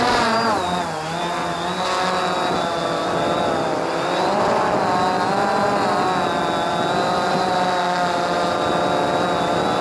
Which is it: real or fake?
real